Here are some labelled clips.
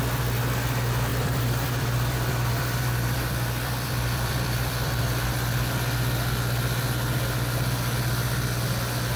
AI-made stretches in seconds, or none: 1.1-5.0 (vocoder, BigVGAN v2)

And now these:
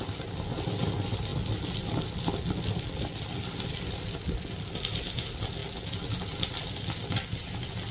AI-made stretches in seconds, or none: none

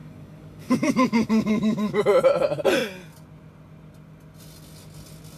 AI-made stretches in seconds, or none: 0.0-2.0 (codec, DAC)